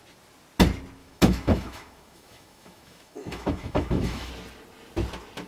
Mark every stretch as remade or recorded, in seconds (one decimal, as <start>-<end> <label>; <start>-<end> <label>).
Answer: 0.0-1.0 recorded; 1.0-4.3 remade; 4.3-5.5 recorded